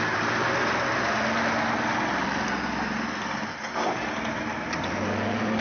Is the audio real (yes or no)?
yes